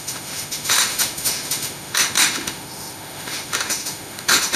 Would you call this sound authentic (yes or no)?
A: no